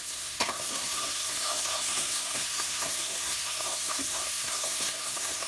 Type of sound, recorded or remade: remade